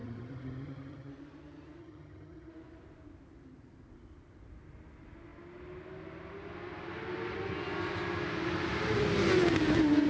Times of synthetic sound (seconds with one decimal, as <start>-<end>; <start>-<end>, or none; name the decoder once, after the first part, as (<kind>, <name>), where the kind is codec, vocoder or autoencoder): 0.0-1.1 (vocoder, HiFi-GAN); 1.8-2.5